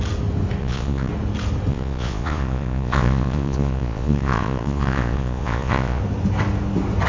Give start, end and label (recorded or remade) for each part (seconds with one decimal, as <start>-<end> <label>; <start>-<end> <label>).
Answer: 0.0-0.6 recorded; 0.6-1.1 remade; 1.1-1.7 recorded; 1.7-6.0 remade; 6.0-7.1 recorded